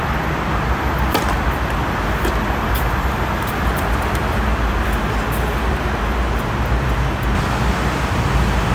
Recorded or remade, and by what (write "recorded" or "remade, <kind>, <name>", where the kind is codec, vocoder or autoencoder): recorded